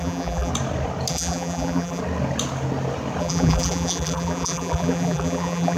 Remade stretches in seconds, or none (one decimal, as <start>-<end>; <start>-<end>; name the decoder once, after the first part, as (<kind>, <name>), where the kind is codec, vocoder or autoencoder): 0.0-0.5 (vocoder, BigVGAN v2); 1.1-2.0; 3.2-5.8